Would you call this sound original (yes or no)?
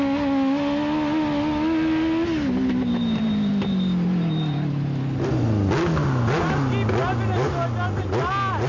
yes